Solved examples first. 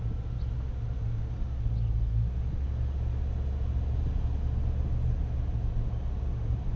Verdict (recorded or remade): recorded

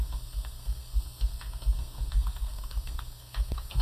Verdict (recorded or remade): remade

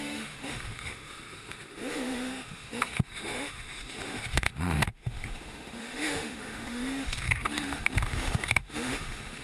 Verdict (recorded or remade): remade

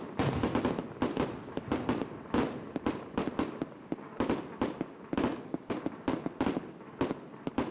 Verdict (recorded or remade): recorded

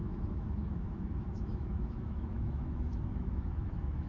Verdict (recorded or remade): remade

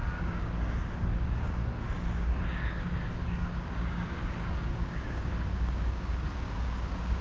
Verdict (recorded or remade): remade